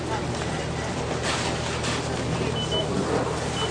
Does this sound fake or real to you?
real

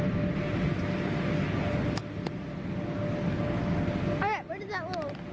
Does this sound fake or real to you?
real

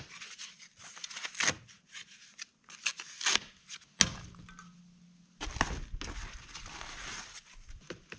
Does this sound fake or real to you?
real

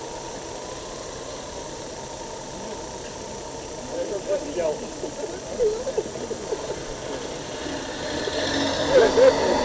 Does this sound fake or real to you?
real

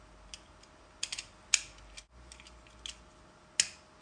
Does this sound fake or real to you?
real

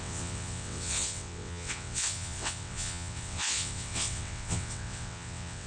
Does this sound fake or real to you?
fake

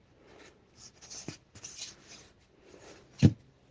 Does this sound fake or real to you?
real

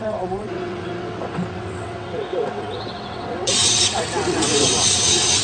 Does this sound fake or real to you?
fake